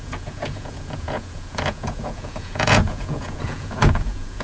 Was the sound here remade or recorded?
remade